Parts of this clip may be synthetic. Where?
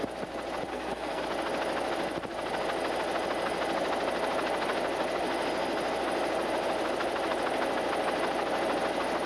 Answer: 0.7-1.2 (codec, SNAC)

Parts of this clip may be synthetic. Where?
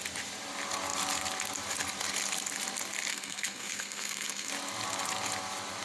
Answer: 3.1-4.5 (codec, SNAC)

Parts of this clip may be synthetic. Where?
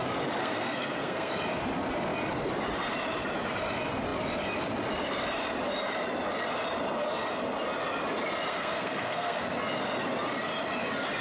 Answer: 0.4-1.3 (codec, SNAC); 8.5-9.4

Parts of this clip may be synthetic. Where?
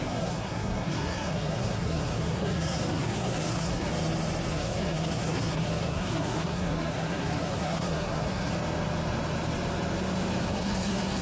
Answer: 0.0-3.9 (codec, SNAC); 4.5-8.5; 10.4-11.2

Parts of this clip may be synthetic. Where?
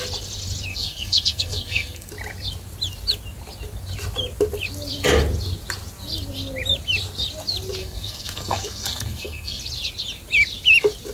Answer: 0.7-2.1 (codec, SNAC); 7.8-9.6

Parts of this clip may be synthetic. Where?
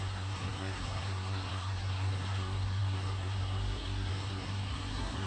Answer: 0.0-5.3 (codec, SNAC)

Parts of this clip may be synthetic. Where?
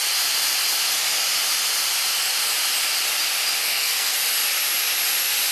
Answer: 3.6-4.2 (codec, SNAC)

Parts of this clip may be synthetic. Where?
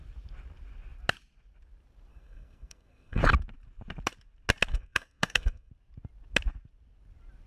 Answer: 2.1-3.2 (codec, SNAC); 4.7-5.7